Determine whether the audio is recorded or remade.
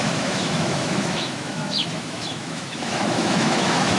remade